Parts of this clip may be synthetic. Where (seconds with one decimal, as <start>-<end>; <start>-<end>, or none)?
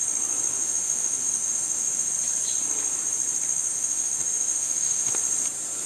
0.5-2.1; 3.7-5.1